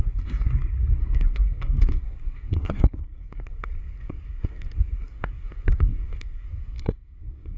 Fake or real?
fake